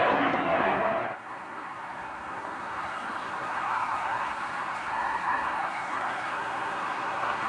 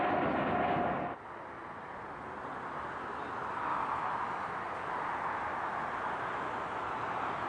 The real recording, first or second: second